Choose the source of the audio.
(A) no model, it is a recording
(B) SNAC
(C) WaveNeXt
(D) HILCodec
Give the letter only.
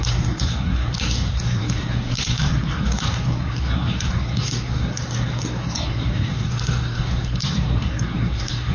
B